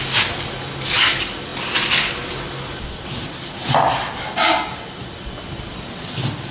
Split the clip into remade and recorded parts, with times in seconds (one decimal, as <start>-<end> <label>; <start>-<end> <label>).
0.0-6.5 recorded